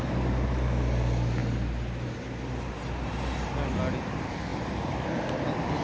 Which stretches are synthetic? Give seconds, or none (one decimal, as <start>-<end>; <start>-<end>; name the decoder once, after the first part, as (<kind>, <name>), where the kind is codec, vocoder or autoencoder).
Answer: none